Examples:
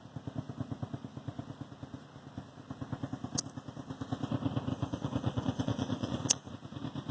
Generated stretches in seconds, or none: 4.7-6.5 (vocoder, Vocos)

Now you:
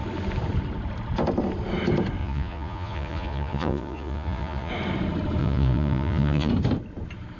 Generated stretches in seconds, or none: 2.2-4.7 (vocoder, Vocos); 5.4-6.5

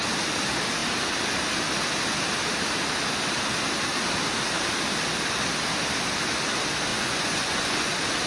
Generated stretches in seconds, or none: 6.9-7.9 (vocoder, Vocos)

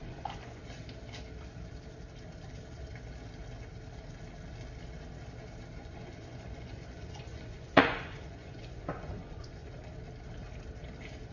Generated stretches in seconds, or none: 0.0-0.6 (vocoder, Vocos); 5.8-9.7

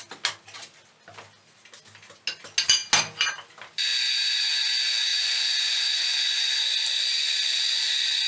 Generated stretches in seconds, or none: none